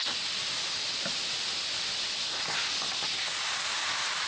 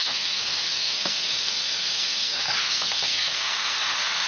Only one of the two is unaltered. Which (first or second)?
first